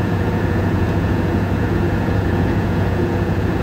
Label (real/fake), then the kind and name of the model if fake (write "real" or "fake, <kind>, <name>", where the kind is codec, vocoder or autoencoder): fake, vocoder, Vocos